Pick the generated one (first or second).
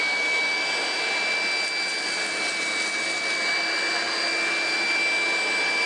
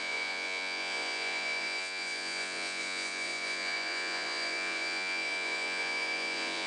second